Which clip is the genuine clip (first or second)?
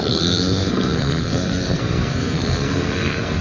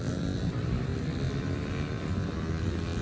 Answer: second